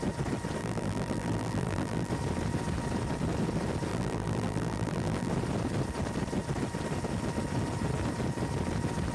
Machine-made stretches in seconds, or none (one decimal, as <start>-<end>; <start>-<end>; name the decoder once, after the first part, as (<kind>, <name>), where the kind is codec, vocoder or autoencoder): 0.6-2.1 (vocoder, BigVGAN v2); 3.9-5.3